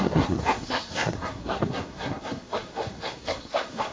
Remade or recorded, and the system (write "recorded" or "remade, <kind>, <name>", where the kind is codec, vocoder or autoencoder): remade, codec, SNAC